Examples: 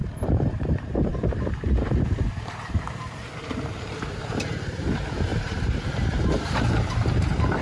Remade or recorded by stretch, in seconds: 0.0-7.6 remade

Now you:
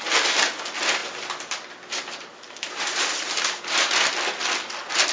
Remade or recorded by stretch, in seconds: 0.0-2.3 recorded; 2.3-3.9 remade; 3.9-5.1 recorded

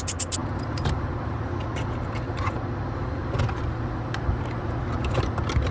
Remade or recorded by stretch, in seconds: 0.0-5.7 recorded

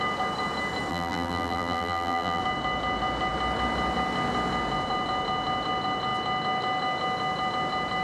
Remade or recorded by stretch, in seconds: 0.0-0.9 recorded; 0.9-2.4 remade; 2.4-8.0 recorded

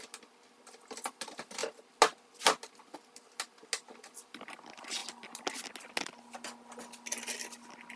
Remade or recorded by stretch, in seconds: 0.0-8.0 recorded

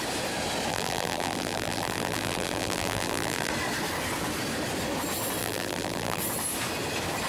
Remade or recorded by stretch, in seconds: 0.0-0.7 recorded; 0.7-3.5 remade; 3.5-5.4 recorded; 5.4-6.2 remade; 6.2-7.3 recorded

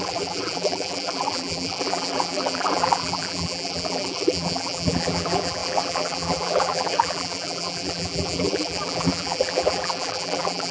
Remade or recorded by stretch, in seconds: 0.0-10.7 remade

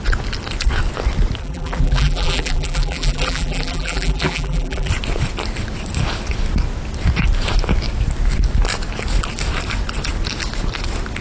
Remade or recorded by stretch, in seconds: 0.0-1.4 recorded; 1.4-4.9 remade; 4.9-11.2 recorded